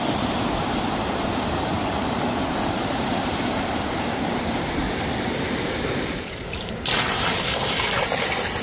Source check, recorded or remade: remade